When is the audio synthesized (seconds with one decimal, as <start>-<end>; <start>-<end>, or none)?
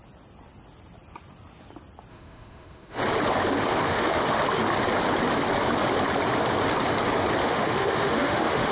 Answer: 2.1-3.0; 3.7-4.4; 7.4-8.7